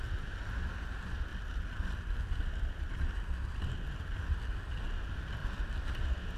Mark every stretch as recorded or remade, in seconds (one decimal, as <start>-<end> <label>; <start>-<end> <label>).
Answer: 0.0-1.3 recorded; 1.3-4.2 remade; 4.2-5.4 recorded; 5.4-6.0 remade; 6.0-6.4 recorded

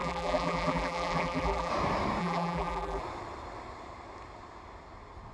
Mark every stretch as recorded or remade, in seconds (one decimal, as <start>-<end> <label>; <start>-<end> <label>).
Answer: 0.0-1.7 remade; 1.7-2.2 recorded; 2.2-3.0 remade; 3.0-5.3 recorded

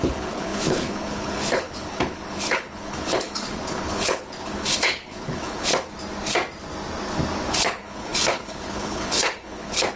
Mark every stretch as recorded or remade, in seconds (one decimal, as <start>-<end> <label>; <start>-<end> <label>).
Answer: 0.0-5.7 remade; 5.7-7.5 recorded; 7.5-10.0 remade